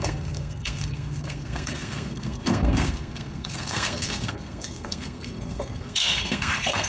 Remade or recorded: remade